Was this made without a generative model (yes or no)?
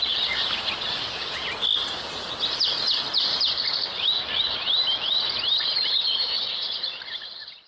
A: yes